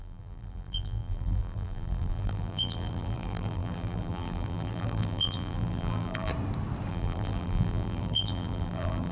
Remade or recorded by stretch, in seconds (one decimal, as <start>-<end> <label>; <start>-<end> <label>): 0.0-6.3 remade; 6.3-6.9 recorded; 6.9-9.1 remade